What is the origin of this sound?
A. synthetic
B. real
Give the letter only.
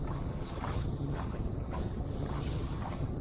A